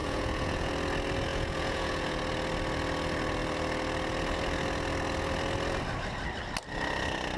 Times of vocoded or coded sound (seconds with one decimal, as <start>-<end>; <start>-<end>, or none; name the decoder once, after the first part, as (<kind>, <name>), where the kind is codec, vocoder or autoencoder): 0.0-0.7 (vocoder, Vocos); 1.3-2.2